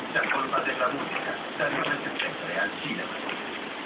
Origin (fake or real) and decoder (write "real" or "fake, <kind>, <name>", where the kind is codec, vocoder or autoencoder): real